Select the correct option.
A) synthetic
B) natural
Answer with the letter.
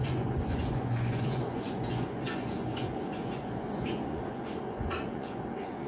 A